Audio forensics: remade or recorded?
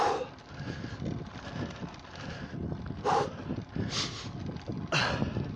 recorded